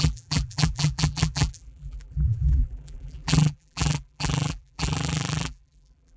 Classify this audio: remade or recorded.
remade